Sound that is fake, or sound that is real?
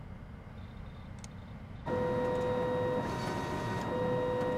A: real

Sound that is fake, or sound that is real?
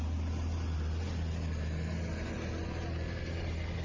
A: real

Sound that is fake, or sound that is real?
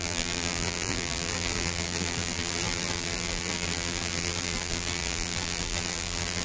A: fake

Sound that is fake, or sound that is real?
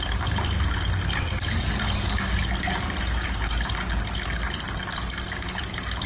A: real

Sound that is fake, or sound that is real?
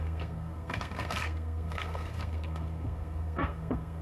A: fake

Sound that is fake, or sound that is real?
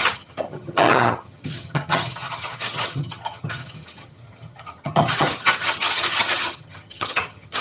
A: fake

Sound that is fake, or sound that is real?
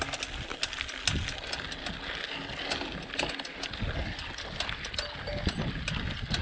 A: real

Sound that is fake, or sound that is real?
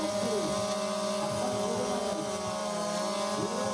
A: real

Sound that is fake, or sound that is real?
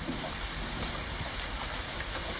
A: real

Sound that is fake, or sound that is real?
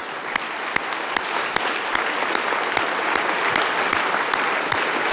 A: real